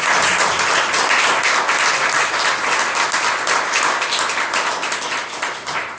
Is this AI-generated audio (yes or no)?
no